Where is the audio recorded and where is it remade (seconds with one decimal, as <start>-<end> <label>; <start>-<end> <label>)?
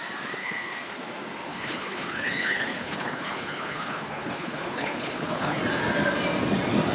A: 0.0-0.4 recorded; 0.4-1.0 remade; 1.0-1.5 recorded; 1.5-5.6 remade; 5.6-6.9 recorded